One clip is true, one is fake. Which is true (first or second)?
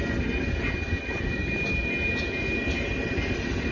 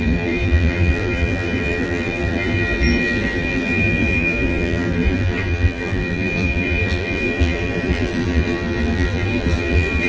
first